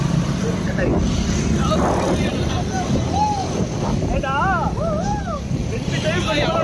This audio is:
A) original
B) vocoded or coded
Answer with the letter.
A